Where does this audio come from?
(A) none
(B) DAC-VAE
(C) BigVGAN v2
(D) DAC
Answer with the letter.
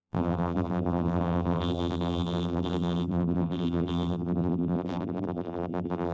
C